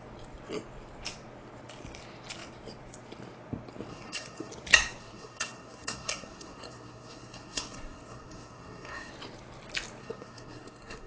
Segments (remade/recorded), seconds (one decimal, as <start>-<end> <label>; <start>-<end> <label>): 0.0-3.9 recorded; 3.9-4.5 remade; 4.5-5.0 recorded; 5.0-9.1 remade; 9.1-10.0 recorded; 10.0-11.1 remade